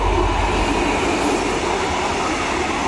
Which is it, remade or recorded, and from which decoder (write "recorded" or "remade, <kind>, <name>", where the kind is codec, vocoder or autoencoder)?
recorded